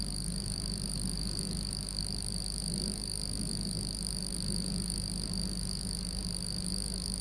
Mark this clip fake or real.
fake